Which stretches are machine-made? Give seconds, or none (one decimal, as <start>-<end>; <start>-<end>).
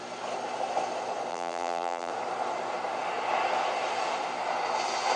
1.3-2.1